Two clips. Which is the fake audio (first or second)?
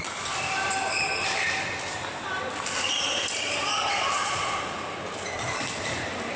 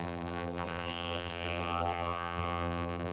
second